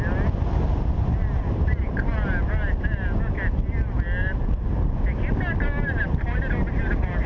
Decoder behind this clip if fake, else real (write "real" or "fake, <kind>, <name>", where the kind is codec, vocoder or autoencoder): real